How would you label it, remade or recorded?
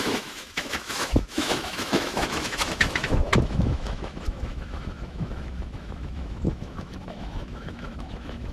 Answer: remade